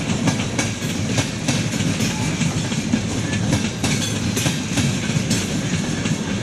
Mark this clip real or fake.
real